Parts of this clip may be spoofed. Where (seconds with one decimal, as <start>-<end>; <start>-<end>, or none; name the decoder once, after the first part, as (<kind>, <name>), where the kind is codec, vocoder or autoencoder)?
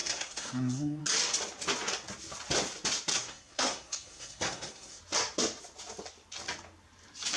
0.0-1.0 (codec, SNAC); 3.1-5.0